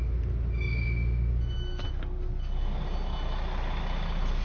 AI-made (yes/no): no